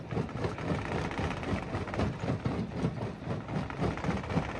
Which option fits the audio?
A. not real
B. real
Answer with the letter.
B